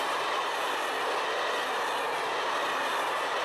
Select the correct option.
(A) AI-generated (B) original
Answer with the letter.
B